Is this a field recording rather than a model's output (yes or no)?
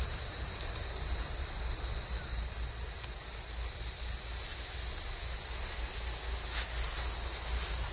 yes